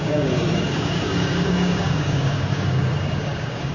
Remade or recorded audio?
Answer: remade